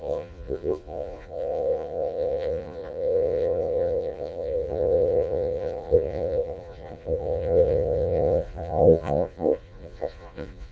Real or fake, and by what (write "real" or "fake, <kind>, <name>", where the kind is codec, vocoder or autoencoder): fake, vocoder, Vocos